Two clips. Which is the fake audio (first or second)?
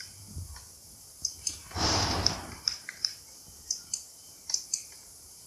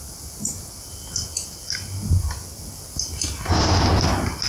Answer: first